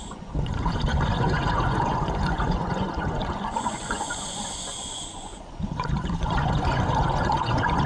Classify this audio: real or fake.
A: fake